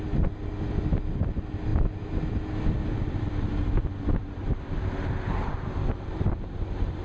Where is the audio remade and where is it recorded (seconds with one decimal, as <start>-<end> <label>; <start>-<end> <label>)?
0.0-7.0 recorded